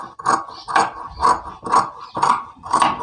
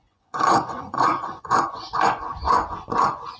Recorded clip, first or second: first